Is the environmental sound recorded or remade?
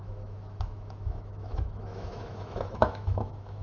remade